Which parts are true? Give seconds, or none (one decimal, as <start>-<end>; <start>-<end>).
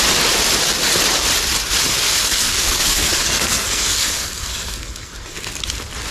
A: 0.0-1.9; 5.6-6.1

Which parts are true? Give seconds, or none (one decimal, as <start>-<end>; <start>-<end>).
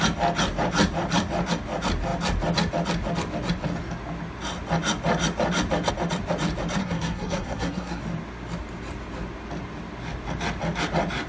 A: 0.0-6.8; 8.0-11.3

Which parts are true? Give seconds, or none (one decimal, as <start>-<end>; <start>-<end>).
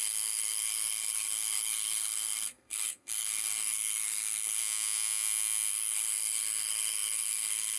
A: 4.6-5.7